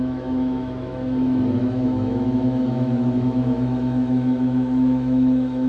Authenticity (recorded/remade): remade